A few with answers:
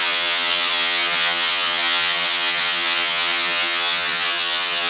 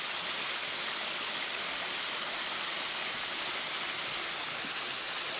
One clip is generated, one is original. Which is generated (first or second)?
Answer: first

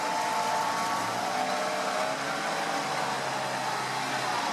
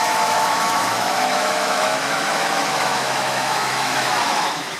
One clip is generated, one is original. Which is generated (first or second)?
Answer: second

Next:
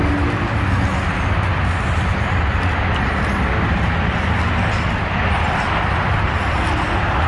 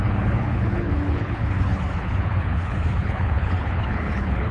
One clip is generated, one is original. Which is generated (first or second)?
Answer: second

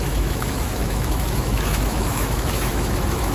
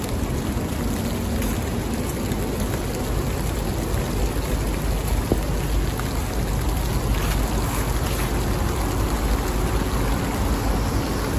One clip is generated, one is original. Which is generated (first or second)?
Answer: first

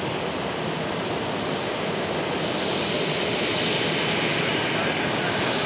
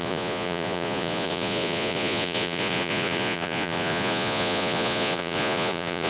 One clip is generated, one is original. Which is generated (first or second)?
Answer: second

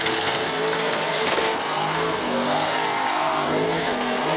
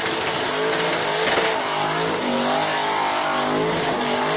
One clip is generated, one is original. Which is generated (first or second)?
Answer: first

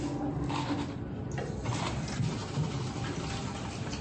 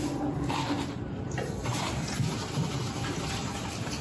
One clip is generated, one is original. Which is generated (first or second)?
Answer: second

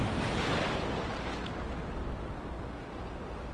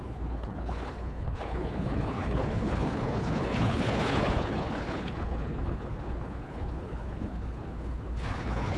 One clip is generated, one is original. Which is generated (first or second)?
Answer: second